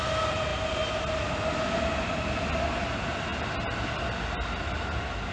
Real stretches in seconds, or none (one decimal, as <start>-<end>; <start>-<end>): 0.0-5.3